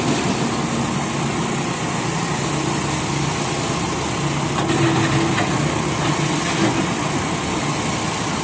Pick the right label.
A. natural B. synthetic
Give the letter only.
A